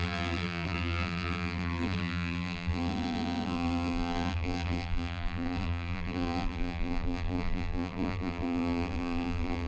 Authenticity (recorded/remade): remade